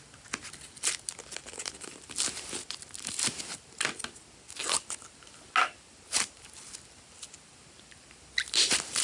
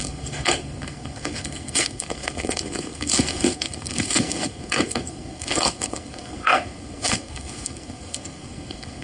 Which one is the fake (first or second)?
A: second